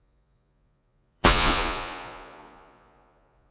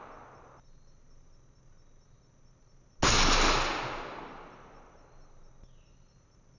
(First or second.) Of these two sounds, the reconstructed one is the first